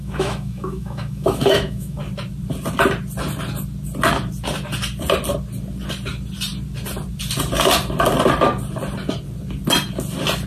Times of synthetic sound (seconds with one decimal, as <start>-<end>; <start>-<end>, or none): 0.0-2.0